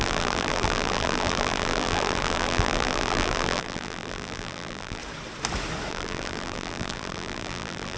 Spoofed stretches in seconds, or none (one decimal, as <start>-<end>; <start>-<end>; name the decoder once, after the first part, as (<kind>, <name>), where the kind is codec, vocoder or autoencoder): 0.0-5.0 (vocoder, BigVGAN v2); 5.9-8.0